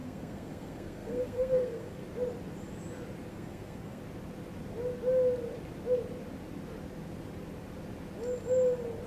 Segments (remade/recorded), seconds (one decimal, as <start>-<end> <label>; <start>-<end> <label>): 0.0-2.0 remade; 2.0-3.3 recorded; 3.3-4.0 remade; 4.0-9.1 recorded